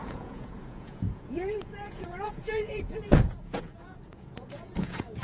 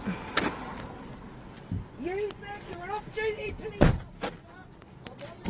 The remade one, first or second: first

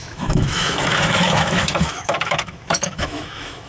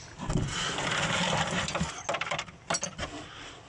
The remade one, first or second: first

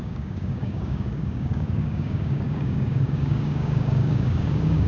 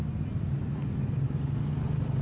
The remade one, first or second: first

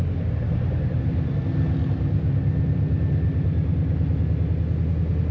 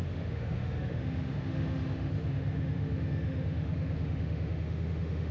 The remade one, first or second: second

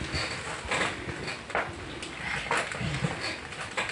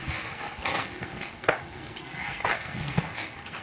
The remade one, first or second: second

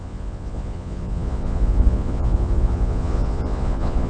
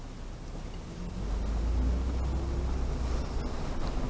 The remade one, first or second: first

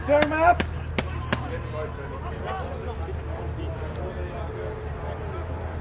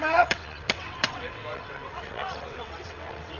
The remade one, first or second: second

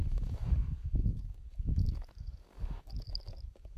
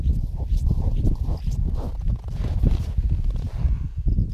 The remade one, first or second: first